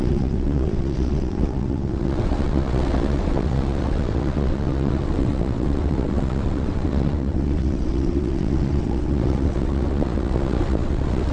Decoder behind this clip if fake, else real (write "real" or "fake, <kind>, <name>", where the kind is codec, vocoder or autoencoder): fake, vocoder, WaveNeXt